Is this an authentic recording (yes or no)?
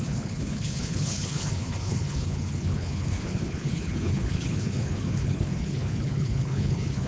no